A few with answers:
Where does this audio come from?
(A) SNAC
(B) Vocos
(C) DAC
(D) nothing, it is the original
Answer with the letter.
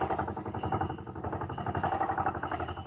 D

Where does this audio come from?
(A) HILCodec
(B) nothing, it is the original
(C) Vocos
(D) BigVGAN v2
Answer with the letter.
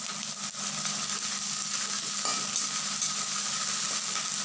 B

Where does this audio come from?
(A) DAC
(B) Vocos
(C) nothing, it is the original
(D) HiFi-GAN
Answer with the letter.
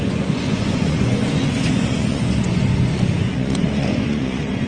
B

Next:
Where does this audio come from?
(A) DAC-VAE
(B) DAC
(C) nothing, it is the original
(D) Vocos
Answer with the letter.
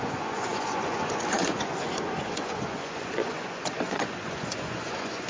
D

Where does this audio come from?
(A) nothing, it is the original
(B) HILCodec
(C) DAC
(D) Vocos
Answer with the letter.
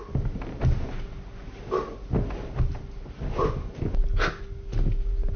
A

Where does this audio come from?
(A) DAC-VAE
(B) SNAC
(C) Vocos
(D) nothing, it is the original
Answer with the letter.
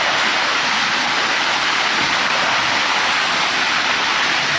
D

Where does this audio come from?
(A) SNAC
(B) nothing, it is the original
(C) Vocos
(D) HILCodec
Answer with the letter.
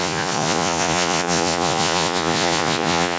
C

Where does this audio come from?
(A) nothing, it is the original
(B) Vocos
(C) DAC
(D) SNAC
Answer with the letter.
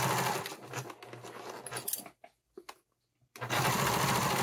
A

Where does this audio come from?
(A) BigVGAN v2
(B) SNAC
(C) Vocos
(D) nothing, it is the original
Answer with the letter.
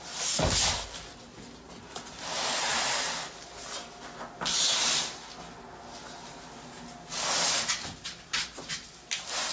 D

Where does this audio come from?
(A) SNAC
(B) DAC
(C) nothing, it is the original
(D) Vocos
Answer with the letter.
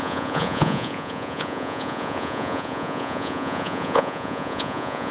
D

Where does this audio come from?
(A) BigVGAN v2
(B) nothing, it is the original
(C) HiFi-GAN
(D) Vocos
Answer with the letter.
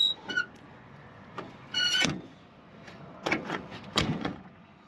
D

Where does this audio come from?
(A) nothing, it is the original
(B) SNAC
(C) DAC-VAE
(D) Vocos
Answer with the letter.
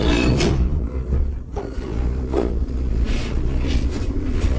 D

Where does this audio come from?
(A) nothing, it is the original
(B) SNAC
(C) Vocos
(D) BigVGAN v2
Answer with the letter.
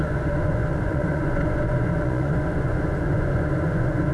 C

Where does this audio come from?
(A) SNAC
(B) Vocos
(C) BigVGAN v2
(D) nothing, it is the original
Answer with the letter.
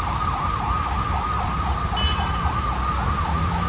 D